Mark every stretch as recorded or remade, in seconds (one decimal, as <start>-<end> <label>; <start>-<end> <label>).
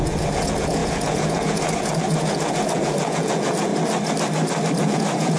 0.0-3.7 remade; 3.7-4.8 recorded; 4.8-5.4 remade